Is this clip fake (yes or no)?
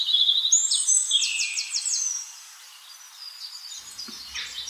no